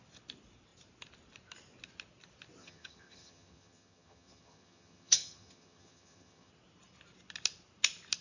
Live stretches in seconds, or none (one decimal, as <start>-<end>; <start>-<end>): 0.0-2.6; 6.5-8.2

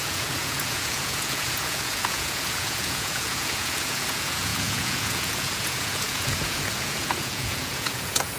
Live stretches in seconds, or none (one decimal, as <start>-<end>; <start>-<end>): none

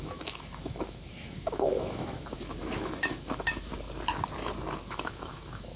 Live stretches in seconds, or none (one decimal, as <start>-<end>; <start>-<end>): 3.7-4.8